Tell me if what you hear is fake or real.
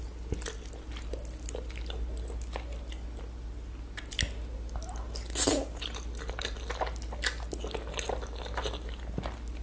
real